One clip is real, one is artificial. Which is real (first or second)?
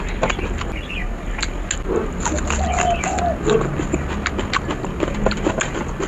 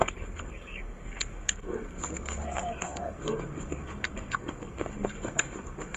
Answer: first